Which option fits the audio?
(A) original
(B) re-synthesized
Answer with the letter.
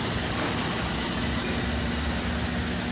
A